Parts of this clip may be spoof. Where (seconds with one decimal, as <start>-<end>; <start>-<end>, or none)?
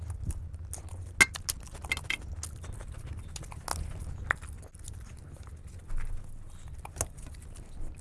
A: none